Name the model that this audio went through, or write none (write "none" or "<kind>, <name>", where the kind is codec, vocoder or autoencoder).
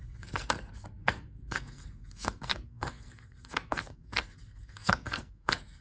codec, SNAC